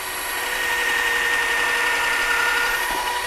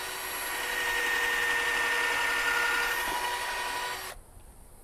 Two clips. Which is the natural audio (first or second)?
second